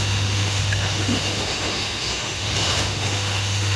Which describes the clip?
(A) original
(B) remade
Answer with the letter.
B